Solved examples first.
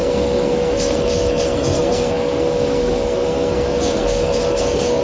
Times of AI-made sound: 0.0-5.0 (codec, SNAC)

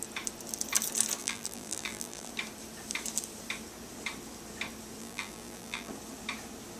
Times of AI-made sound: 1.2-2.3 (vocoder, BigVGAN v2); 5.0-5.9